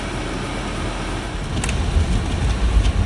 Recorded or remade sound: recorded